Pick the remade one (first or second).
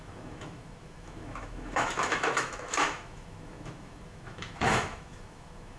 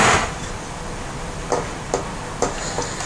first